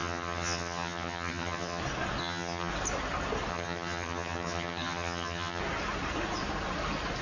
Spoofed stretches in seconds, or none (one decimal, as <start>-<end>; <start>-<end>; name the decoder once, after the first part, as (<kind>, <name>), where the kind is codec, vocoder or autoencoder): 0.0-1.8 (vocoder, HiFi-GAN); 2.2-2.7; 3.5-5.6